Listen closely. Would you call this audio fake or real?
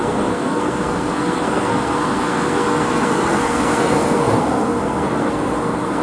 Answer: fake